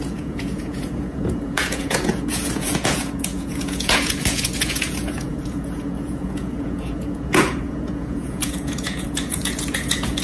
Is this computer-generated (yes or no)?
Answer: yes